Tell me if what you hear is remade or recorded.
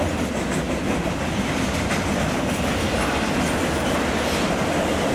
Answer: recorded